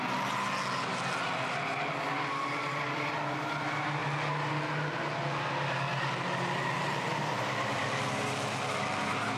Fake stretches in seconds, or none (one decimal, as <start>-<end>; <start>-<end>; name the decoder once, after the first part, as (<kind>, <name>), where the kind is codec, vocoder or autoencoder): none